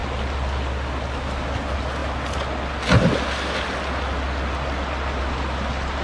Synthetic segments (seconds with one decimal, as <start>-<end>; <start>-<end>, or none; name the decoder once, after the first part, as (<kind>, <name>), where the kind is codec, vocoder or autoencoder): none